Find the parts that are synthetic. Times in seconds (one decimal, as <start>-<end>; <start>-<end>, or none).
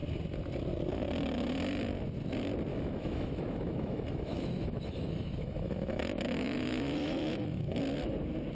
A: 2.7-7.8